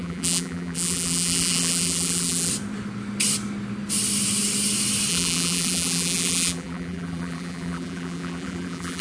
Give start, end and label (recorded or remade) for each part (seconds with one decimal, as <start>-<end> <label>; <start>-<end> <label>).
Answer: 0.0-2.5 remade; 2.5-5.1 recorded; 5.1-9.0 remade